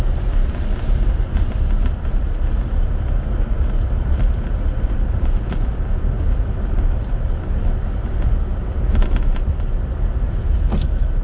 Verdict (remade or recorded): remade